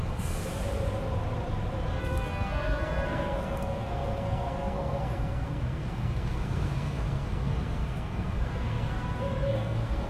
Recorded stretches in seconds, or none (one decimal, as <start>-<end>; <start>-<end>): 0.5-2.0